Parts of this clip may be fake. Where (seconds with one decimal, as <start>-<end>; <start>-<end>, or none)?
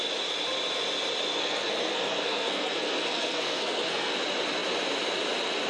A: 1.4-4.1